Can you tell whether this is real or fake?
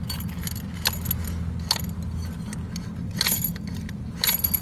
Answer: real